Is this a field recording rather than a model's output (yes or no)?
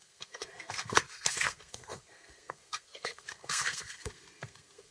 no